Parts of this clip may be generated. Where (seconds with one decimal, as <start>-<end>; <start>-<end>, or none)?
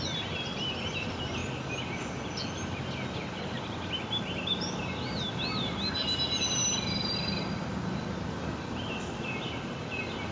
none